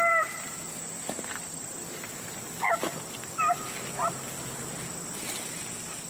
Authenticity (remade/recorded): recorded